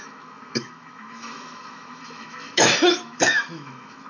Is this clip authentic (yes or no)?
no